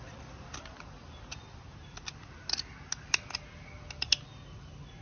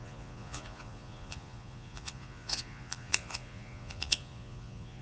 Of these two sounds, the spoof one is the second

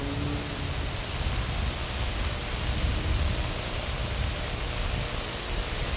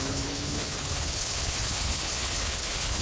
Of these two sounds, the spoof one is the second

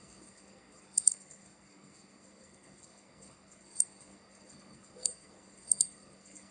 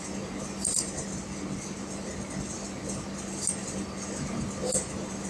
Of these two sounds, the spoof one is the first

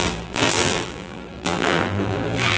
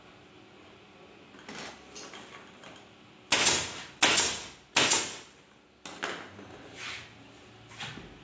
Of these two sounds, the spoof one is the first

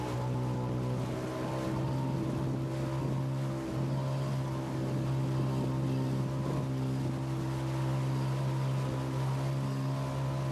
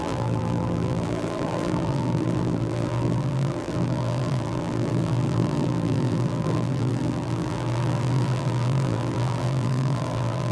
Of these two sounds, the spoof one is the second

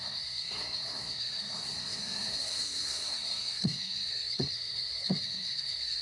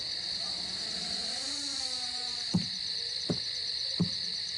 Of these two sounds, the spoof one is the first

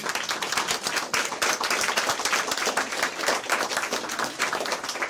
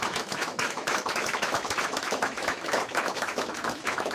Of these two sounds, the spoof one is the second